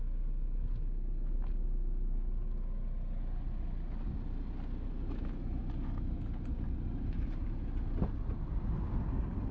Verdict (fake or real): real